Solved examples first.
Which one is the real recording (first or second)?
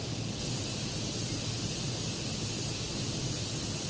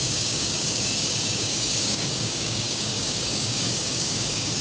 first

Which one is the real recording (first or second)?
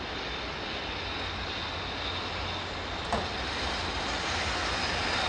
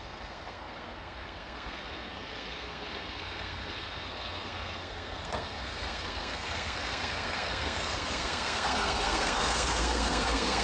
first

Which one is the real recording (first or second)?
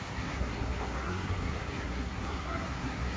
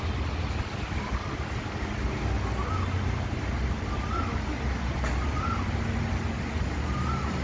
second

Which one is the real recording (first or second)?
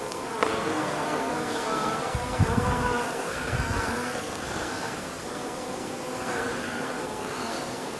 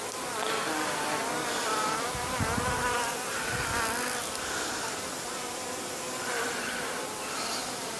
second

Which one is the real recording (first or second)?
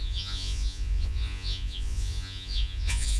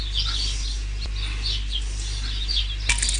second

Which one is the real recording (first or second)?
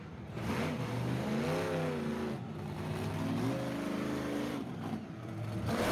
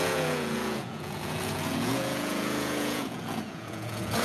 first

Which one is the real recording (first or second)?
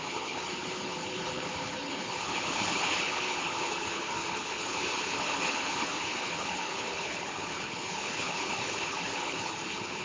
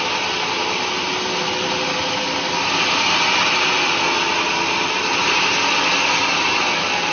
second